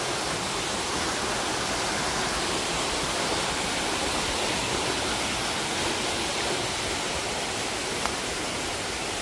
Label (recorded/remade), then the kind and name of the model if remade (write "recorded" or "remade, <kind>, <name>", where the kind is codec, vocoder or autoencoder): recorded